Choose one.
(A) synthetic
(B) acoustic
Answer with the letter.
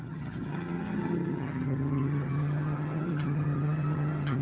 A